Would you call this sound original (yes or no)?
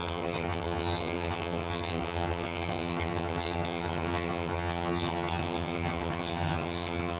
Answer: no